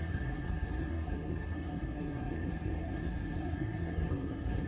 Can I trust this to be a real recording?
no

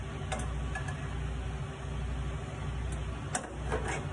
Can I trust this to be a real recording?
yes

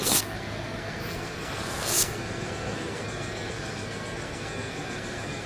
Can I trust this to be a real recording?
no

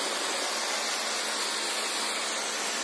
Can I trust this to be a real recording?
yes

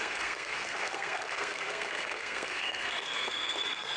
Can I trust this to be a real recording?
no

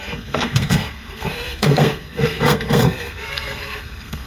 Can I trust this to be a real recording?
no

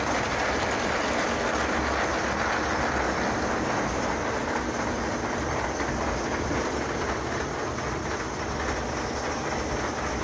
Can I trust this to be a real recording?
yes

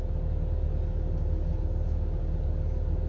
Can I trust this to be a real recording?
yes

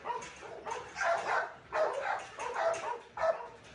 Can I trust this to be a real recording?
yes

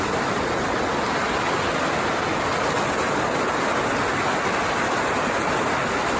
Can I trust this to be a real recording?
yes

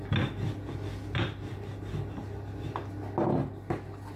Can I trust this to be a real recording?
yes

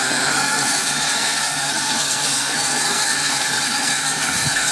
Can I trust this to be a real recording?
no